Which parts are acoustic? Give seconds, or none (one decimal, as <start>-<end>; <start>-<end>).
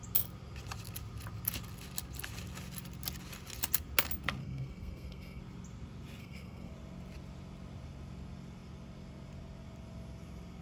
0.0-4.4; 5.4-6.2; 6.7-10.6